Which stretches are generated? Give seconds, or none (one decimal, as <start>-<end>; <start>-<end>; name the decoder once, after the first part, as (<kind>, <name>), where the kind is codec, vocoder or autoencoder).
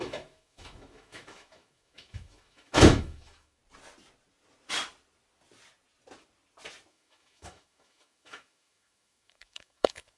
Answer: 0.0-3.6 (autoencoder, DAC-VAE); 6.9-10.2